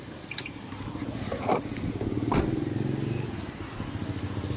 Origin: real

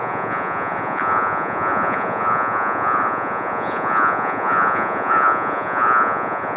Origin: fake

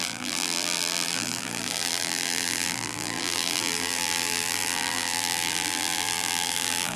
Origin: fake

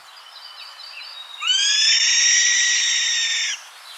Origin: real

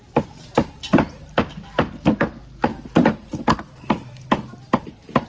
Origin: real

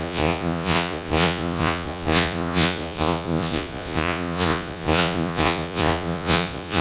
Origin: fake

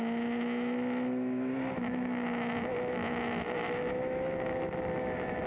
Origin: fake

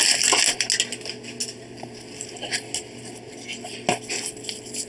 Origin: real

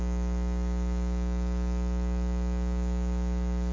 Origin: fake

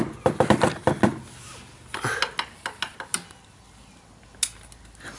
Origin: real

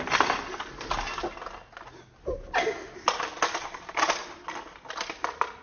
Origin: real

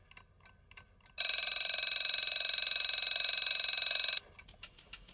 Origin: real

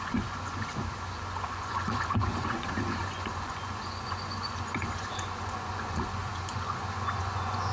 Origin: fake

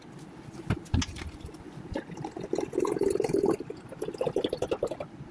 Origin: real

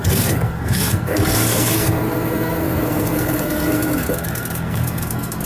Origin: fake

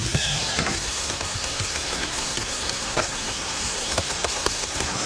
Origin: fake